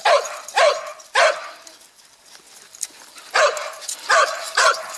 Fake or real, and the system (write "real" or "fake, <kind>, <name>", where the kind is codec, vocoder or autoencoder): fake, vocoder, BigVGAN v2